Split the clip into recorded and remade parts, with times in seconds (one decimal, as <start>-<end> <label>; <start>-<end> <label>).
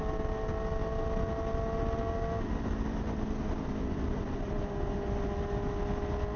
0.0-6.4 recorded